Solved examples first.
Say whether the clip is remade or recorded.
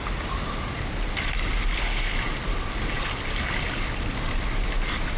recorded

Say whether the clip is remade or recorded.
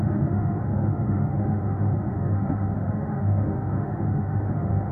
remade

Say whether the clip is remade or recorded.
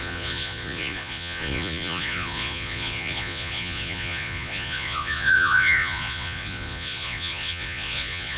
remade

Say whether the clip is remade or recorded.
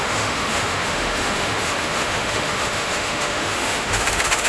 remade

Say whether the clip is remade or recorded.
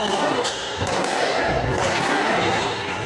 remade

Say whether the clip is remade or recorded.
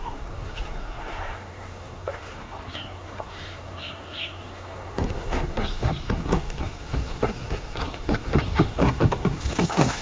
remade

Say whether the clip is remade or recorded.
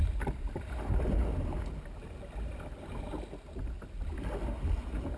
recorded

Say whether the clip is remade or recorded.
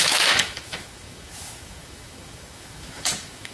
remade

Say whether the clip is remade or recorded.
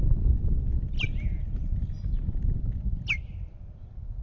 recorded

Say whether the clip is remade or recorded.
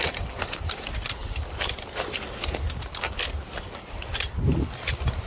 recorded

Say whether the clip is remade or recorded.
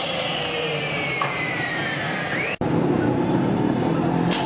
remade